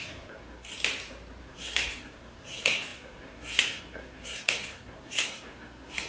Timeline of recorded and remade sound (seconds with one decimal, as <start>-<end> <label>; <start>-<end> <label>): 0.0-0.7 remade; 0.7-1.4 recorded; 1.4-6.1 remade